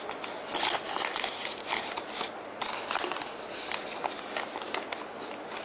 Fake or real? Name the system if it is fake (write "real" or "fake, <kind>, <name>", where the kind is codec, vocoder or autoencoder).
real